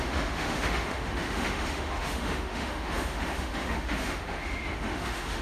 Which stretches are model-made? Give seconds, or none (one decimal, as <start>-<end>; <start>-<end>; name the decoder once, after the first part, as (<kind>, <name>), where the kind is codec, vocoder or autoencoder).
0.0-5.4 (autoencoder, DAC-VAE)